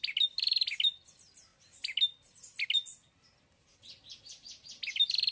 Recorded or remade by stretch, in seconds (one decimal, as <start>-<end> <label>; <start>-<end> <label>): 0.0-5.3 recorded